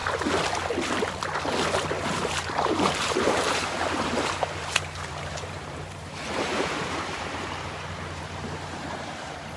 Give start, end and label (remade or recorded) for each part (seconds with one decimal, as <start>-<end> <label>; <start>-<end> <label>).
0.0-2.0 recorded; 2.0-9.6 remade